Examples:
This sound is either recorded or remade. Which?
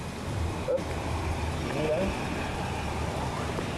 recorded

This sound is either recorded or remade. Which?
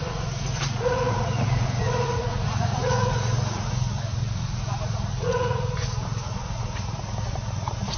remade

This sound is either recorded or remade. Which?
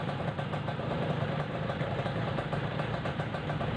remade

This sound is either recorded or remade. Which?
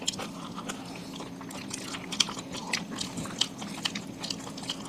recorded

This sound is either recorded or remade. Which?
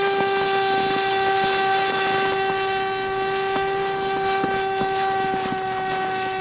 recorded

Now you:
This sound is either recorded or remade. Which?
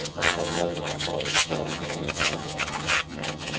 remade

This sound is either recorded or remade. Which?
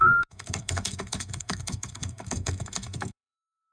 remade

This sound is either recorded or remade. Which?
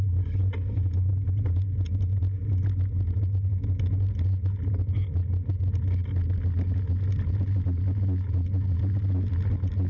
recorded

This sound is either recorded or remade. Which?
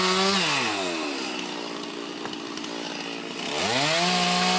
recorded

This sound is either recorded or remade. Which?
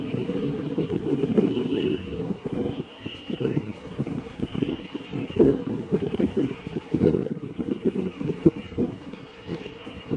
remade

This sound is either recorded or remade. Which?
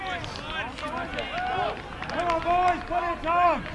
recorded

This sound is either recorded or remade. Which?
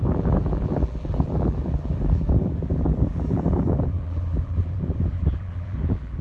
remade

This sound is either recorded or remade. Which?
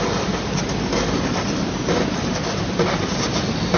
recorded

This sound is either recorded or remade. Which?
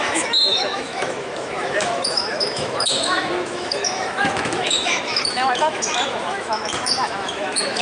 remade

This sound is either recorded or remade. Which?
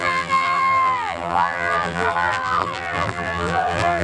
remade